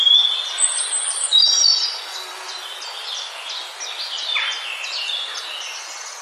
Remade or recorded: recorded